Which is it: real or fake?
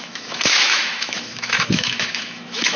fake